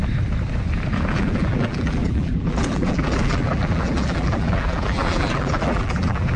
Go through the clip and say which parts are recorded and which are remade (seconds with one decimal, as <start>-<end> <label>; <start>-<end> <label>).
0.0-1.1 recorded; 1.1-6.4 remade